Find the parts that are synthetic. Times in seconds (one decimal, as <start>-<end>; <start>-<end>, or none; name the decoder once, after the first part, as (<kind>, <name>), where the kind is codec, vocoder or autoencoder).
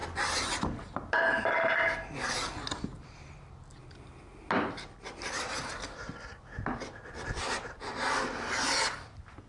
none